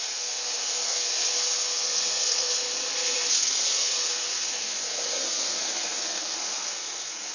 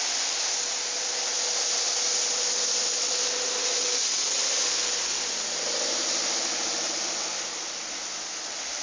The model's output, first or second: first